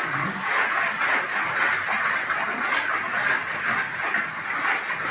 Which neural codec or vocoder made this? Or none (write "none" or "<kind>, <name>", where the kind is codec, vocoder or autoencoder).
none